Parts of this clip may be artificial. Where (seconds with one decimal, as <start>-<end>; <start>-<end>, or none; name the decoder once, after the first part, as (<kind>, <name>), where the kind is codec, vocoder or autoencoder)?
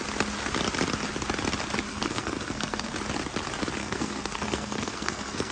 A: 1.9-2.9 (codec, SNAC); 3.8-5.5